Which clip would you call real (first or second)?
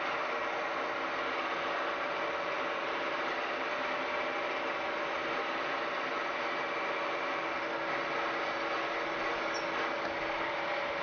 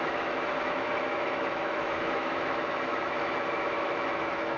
first